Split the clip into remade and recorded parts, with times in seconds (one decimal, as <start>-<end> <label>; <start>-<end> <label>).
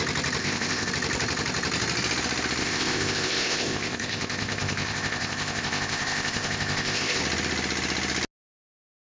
0.0-0.4 recorded; 0.4-0.9 remade; 0.9-2.6 recorded; 2.6-7.2 remade; 7.2-9.0 recorded